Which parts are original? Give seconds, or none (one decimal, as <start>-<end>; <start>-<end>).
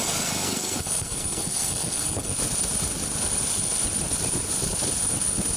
2.3-5.6